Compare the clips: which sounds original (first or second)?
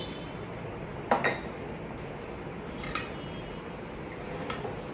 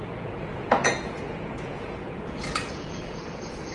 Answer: first